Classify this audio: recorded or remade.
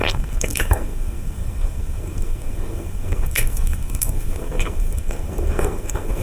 remade